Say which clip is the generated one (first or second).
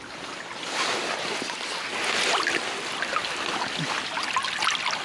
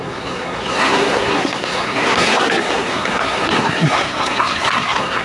second